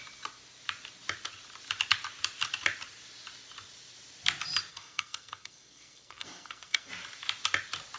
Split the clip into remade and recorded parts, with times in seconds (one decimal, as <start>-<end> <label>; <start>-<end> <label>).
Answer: 0.0-4.7 recorded; 4.7-6.9 remade; 6.9-8.0 recorded